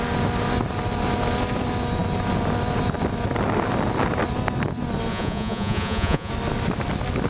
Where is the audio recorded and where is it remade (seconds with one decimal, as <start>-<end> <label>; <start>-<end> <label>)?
0.0-5.1 recorded; 5.1-6.3 remade; 6.3-7.3 recorded